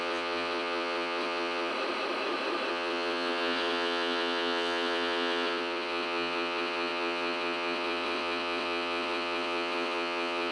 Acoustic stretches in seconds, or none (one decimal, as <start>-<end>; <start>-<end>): 1.7-2.7